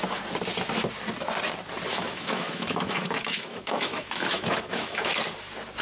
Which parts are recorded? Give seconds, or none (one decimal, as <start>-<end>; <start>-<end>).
0.0-1.9; 5.1-5.8